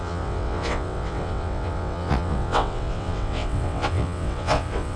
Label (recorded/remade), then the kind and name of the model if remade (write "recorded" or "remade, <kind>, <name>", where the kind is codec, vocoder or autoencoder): remade, vocoder, WaveNeXt